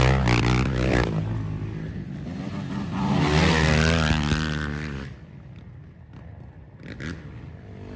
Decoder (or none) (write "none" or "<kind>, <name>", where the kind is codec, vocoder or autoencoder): none